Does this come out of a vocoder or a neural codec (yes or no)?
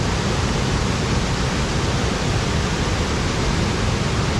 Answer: no